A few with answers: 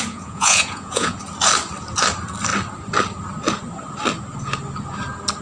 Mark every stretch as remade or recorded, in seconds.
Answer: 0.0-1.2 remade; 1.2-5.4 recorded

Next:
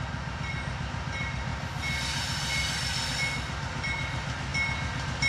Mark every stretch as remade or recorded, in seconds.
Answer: 0.0-5.3 recorded

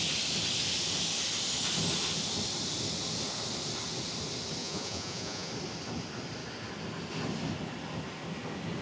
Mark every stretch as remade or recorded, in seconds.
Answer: 0.0-4.6 recorded; 4.6-5.5 remade; 5.5-8.8 recorded

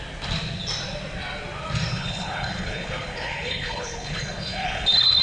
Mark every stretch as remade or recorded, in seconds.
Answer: 0.0-1.9 recorded; 1.9-5.2 remade

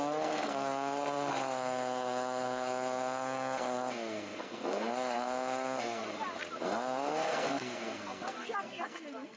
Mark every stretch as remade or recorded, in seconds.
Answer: 0.0-6.0 remade; 6.0-6.6 recorded; 6.6-9.4 remade

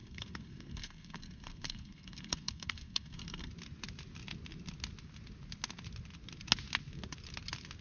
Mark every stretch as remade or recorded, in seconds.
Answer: 0.0-3.5 remade; 3.5-7.8 recorded

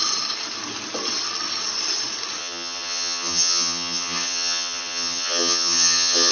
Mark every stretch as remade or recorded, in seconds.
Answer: 0.0-2.4 recorded; 2.4-6.3 remade

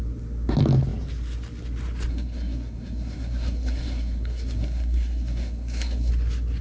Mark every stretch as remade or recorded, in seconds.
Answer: 0.0-2.1 recorded; 2.1-6.1 remade; 6.1-6.6 recorded